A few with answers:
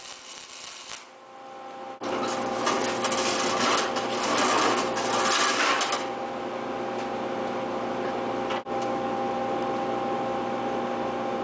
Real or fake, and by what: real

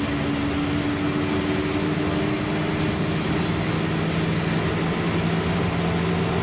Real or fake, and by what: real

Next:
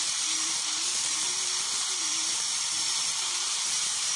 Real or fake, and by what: fake, vocoder, BigVGAN v2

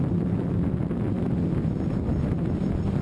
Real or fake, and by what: real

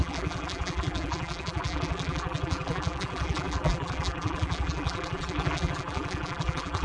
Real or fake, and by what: fake, vocoder, BigVGAN v2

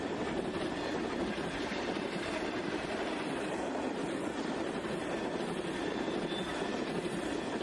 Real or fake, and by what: fake, vocoder, BigVGAN v2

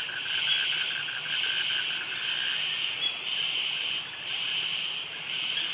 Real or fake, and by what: fake, vocoder, BigVGAN v2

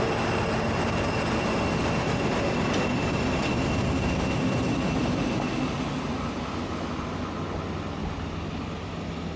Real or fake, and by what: real